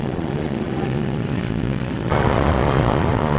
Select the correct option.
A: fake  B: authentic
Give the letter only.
A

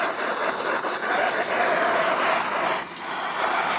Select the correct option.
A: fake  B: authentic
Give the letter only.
B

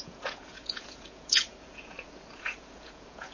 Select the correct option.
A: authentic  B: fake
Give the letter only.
B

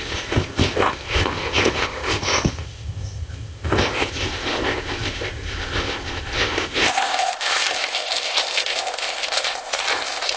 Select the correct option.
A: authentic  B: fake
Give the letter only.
B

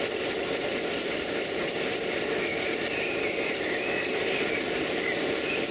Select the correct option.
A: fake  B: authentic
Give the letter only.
B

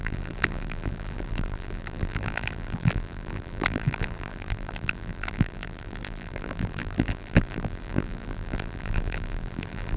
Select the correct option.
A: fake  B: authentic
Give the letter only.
A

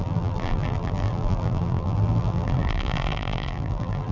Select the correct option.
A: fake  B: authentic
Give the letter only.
A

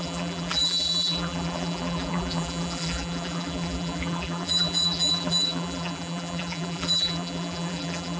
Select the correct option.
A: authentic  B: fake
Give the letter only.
B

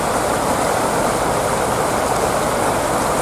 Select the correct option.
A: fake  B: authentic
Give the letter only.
B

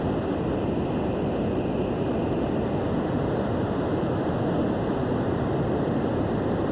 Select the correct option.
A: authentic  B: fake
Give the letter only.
A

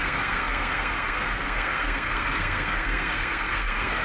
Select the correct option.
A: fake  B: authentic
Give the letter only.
A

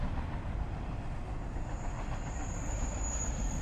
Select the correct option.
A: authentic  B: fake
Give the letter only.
A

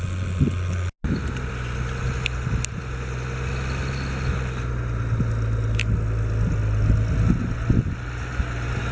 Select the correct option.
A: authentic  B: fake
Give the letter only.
A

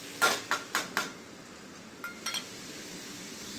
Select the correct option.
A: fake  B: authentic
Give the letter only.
B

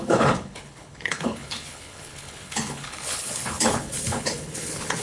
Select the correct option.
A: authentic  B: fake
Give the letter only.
B